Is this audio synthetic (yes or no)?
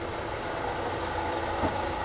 no